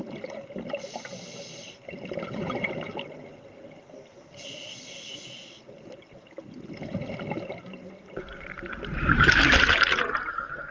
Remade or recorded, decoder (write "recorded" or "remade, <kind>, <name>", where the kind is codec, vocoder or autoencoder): recorded